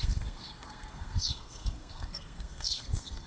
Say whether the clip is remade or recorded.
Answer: remade